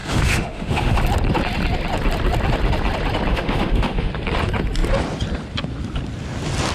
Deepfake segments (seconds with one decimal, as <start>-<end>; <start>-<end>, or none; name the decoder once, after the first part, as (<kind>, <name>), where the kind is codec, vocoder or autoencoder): 0.0-1.0 (autoencoder, DAC-VAE); 3.3-4.1